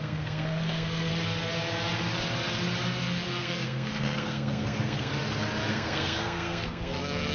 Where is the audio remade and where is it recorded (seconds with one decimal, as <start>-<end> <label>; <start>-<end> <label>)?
0.0-1.1 remade; 1.1-3.4 recorded; 3.4-5.1 remade; 5.1-5.7 recorded; 5.7-7.3 remade